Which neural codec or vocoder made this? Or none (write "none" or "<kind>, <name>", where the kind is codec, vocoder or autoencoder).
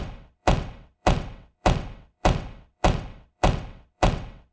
vocoder, WaveNeXt